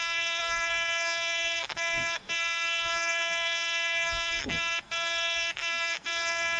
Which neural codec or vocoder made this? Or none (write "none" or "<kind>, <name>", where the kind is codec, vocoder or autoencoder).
codec, SNAC